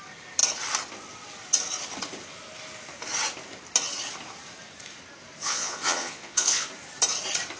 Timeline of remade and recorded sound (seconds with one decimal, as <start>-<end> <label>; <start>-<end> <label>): 0.0-5.4 recorded; 5.4-6.7 remade; 6.7-7.6 recorded